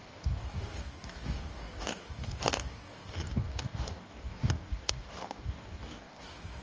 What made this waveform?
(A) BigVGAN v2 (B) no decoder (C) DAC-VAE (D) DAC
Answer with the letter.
D